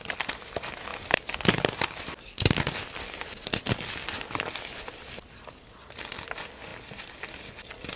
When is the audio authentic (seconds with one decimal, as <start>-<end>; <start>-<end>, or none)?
0.0-8.0